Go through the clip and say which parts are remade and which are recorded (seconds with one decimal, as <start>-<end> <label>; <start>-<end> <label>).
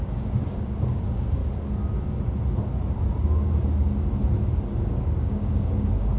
0.0-1.4 remade; 1.4-4.8 recorded; 4.8-6.2 remade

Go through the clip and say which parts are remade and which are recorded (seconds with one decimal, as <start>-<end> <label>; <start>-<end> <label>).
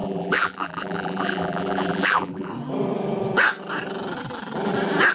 0.0-2.5 remade; 2.5-5.1 recorded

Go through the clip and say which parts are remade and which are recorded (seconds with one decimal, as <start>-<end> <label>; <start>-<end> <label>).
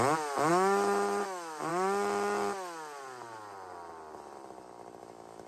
0.0-1.7 remade; 1.7-5.0 recorded; 5.0-5.5 remade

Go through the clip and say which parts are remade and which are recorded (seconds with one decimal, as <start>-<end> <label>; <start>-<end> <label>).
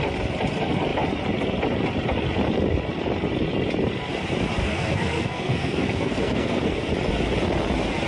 0.0-4.6 recorded; 4.6-6.9 remade; 6.9-8.1 recorded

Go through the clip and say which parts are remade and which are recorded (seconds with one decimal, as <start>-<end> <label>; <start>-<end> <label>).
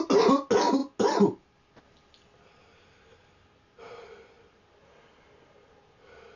0.0-6.4 recorded